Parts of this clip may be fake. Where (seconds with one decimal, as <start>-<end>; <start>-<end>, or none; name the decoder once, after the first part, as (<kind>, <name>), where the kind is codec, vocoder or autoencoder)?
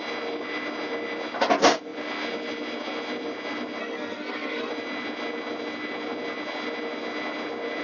3.8-4.7 (codec, SNAC)